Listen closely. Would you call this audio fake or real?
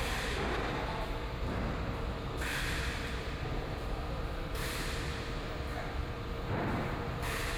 fake